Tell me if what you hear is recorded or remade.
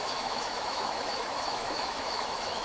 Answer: remade